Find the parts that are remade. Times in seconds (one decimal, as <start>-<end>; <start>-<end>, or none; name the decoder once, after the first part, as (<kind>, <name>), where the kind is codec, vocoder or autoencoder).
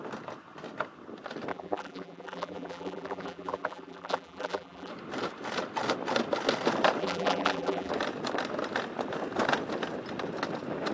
1.5-4.9 (vocoder, BigVGAN v2); 7.0-7.9